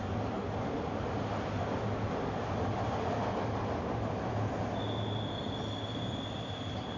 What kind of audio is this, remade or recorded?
recorded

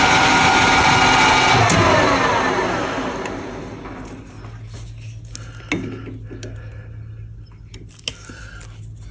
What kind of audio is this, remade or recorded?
recorded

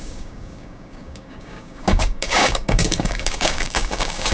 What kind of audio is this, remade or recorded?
remade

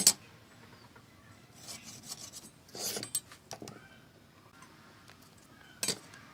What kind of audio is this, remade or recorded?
recorded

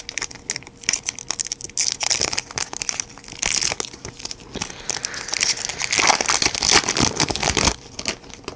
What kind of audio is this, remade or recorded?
recorded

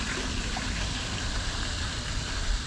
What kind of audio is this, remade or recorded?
recorded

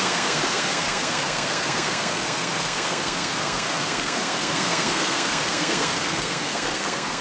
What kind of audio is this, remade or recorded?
remade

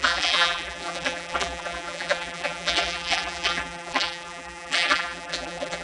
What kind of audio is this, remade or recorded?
remade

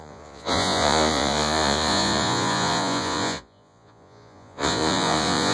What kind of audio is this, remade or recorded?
remade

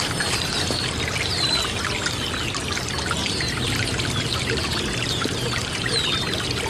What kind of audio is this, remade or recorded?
recorded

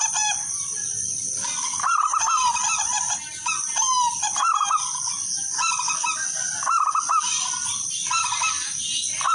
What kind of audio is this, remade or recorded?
recorded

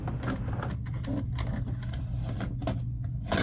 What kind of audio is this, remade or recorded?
recorded